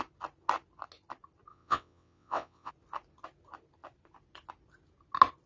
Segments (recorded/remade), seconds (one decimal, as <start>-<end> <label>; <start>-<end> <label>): 0.0-1.5 recorded; 1.5-2.7 remade; 2.7-5.5 recorded